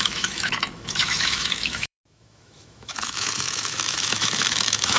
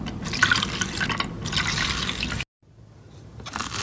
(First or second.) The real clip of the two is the second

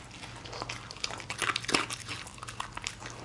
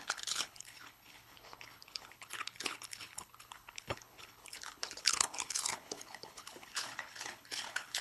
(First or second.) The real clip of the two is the first